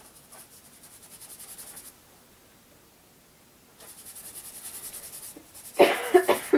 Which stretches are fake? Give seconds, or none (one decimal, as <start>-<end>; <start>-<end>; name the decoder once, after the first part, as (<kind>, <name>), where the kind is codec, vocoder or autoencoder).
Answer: none